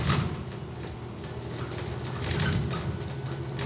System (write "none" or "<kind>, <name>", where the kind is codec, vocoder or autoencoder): none